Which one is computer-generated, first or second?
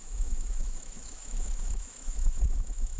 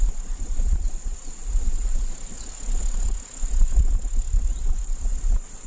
first